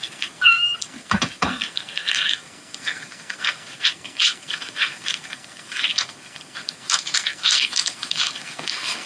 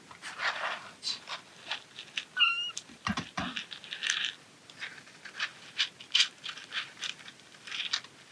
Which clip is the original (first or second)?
second